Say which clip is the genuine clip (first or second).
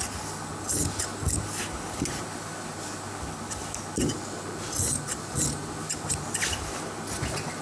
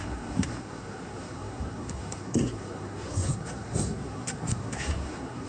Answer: first